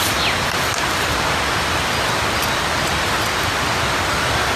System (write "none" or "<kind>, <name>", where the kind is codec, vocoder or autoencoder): none